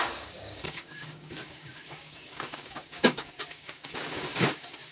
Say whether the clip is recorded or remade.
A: remade